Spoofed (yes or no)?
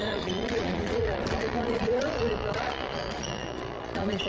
yes